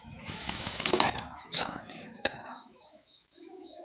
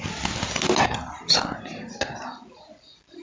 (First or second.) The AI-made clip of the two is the first